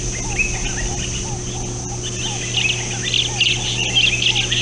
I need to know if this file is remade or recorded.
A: recorded